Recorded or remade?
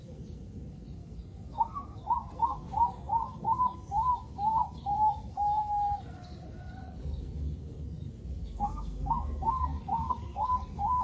remade